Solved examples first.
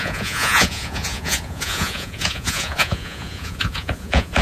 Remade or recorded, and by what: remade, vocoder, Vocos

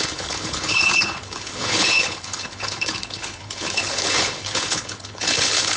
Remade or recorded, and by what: remade, codec, HILCodec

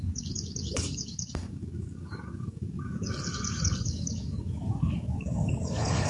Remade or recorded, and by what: remade, codec, DAC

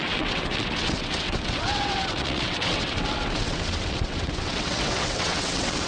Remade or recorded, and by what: remade, vocoder, WaveNeXt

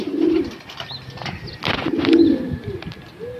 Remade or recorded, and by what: recorded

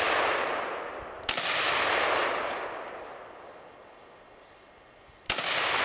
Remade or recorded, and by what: recorded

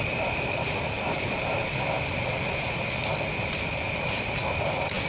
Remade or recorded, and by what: recorded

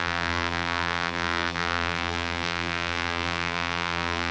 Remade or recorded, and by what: remade, vocoder, BigVGAN v2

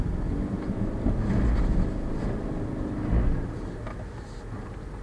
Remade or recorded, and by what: recorded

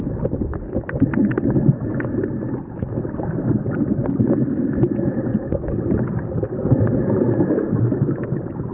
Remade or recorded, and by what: recorded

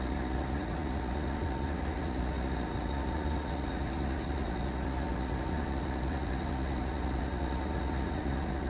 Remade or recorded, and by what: remade, vocoder, Vocos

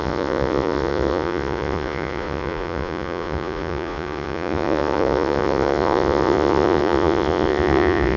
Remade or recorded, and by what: remade, vocoder, Vocos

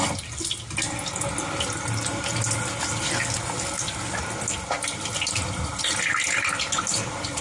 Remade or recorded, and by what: recorded